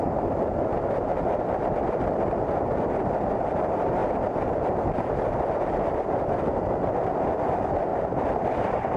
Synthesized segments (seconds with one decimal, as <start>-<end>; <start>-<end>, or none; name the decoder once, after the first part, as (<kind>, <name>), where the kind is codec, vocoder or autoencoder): 1.1-2.2 (vocoder, BigVGAN v2); 4.0-7.5; 7.9-9.0